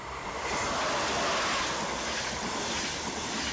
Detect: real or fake real